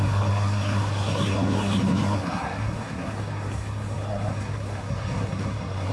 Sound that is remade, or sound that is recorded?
remade